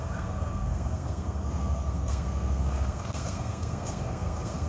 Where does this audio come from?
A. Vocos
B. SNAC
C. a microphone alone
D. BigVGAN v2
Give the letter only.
B